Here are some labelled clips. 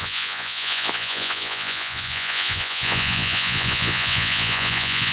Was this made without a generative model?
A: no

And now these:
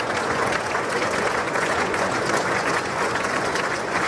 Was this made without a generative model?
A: no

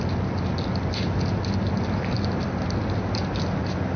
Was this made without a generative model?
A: yes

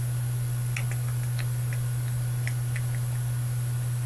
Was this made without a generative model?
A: yes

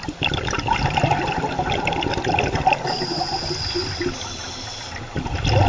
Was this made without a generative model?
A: yes